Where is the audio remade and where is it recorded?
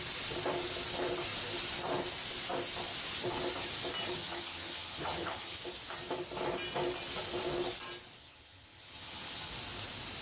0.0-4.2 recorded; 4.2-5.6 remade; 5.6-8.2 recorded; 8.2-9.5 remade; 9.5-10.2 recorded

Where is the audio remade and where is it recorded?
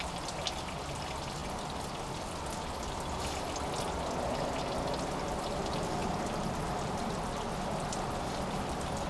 0.0-6.0 recorded; 6.0-9.1 remade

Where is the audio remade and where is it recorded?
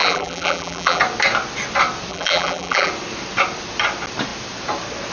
0.0-1.0 remade; 1.0-2.1 recorded; 2.1-2.9 remade; 2.9-5.1 recorded